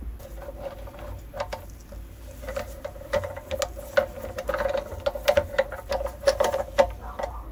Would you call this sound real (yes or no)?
yes